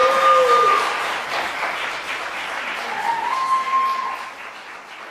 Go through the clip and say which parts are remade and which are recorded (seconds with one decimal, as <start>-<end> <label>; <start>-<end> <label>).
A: 0.0-3.2 recorded; 3.2-3.8 remade; 3.8-5.1 recorded